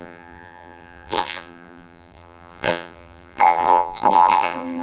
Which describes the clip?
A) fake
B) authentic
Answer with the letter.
A